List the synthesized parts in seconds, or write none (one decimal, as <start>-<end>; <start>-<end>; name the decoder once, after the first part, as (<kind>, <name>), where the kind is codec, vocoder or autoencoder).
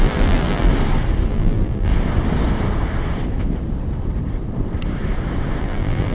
0.0-0.7 (vocoder, BigVGAN v2); 1.3-1.9; 5.6-6.1